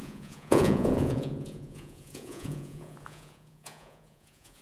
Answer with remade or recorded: remade